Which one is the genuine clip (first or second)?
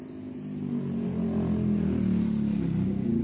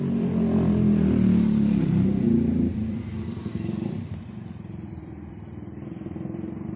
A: first